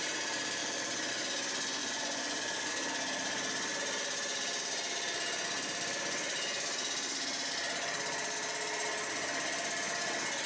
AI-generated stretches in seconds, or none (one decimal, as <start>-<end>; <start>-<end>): 1.8-2.7